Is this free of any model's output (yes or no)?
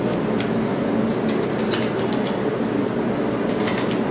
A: yes